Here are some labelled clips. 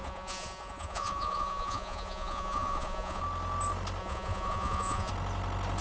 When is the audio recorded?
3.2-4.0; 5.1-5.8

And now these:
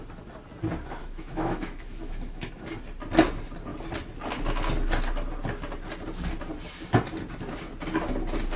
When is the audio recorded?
0.0-1.0; 2.5-8.6

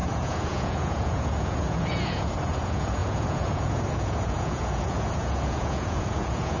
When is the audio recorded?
none

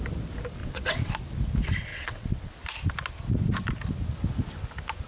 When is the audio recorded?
0.0-0.6; 1.1-1.9; 2.5-5.1

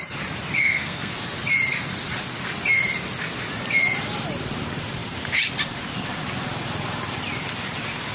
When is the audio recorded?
0.0-0.6; 1.1-8.1

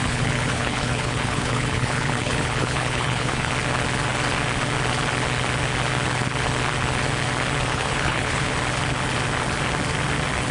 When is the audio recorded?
3.5-7.7; 8.5-10.5

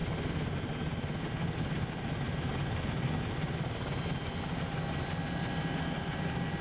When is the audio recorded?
0.0-6.6